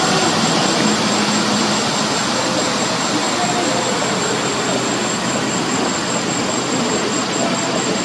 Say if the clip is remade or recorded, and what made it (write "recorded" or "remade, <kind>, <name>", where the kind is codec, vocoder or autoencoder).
recorded